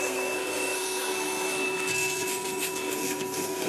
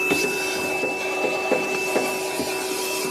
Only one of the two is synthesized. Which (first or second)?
first